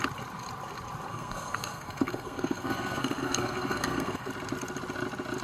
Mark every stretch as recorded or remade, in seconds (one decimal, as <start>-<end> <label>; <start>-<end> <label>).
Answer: 0.0-1.1 recorded; 1.1-4.3 remade; 4.3-5.4 recorded